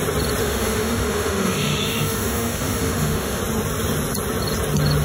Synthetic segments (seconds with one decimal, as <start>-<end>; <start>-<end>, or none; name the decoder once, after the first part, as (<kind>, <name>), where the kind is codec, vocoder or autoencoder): 0.4-3.4 (autoencoder, DAC-VAE)